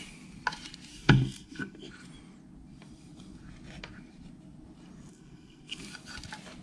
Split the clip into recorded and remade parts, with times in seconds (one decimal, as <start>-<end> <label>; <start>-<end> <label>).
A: 0.0-0.9 recorded; 0.9-1.9 remade; 1.9-5.1 recorded; 5.1-5.8 remade; 5.8-6.6 recorded